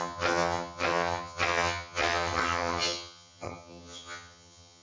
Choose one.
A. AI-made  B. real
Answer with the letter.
A